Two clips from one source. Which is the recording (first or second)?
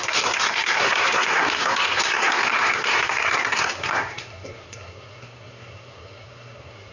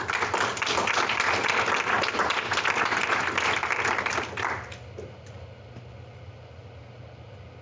second